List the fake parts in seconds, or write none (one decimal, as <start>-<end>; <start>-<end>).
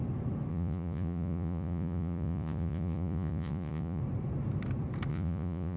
0.5-4.0; 5.1-5.8